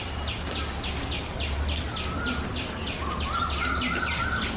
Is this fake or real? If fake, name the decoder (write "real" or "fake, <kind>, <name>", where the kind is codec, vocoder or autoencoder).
real